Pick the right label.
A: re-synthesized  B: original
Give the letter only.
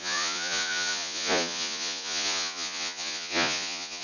A